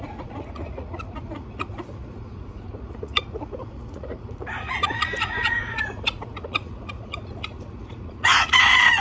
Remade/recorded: remade